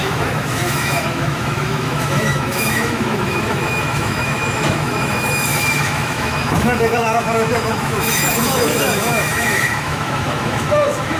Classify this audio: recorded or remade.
remade